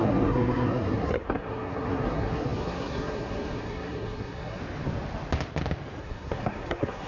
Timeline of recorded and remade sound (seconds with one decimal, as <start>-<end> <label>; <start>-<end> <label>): 0.0-4.6 remade; 4.6-6.0 recorded; 6.0-7.1 remade